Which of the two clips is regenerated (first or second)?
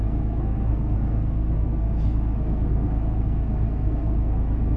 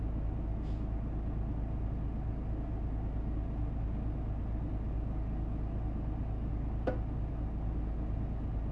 first